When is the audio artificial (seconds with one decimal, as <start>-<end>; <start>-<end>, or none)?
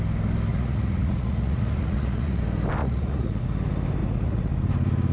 0.5-2.4; 2.8-3.4; 4.0-4.5